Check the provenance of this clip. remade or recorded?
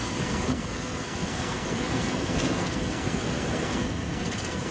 remade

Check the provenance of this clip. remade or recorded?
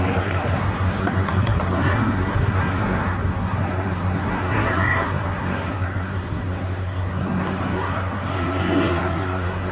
remade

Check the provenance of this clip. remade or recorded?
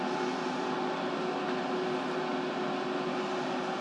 recorded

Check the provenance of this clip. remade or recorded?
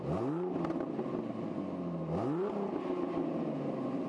recorded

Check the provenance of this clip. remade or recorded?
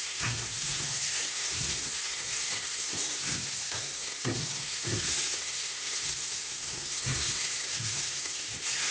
remade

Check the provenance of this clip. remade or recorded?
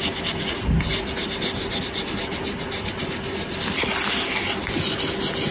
recorded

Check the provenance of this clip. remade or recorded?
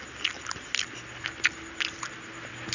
recorded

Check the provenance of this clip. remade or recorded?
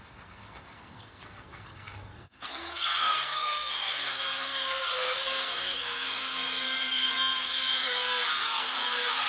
remade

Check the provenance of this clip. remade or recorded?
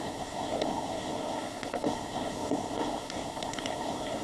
remade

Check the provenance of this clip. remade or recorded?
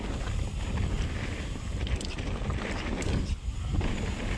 recorded